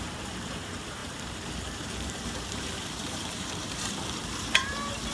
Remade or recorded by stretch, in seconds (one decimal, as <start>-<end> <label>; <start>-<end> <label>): 0.0-5.1 remade